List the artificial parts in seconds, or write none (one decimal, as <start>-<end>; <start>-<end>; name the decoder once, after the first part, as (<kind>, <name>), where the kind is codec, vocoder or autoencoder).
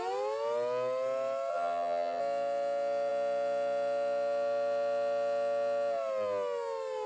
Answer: 1.5-2.2 (vocoder, HiFi-GAN)